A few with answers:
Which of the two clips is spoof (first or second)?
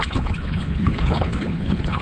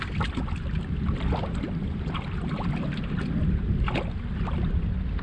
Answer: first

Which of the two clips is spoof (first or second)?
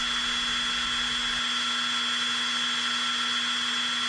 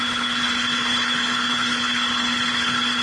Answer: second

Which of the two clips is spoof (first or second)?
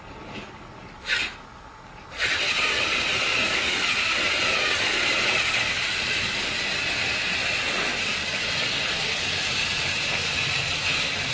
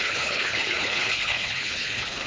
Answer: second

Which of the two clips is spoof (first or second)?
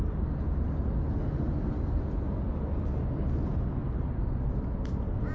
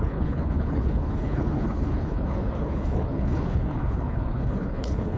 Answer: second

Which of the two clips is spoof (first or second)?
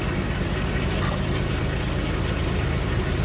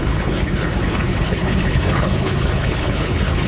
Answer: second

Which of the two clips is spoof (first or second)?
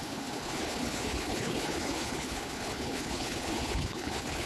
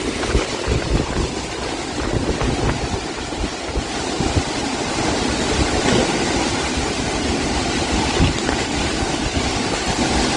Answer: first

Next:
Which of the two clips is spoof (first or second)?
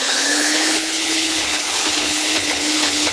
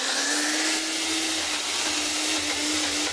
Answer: first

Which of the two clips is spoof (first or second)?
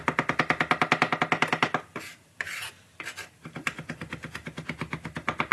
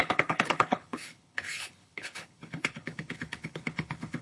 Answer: second